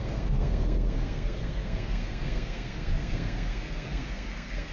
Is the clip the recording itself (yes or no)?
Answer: no